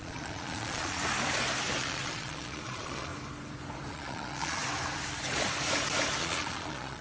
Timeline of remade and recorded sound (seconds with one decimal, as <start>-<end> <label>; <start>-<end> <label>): 0.0-1.0 remade; 1.0-1.8 recorded; 1.8-3.1 remade; 3.1-3.9 recorded; 3.9-4.6 remade; 4.6-6.2 recorded; 6.2-7.0 remade